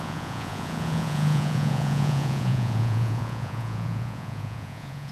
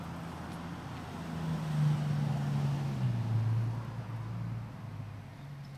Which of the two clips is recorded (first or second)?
second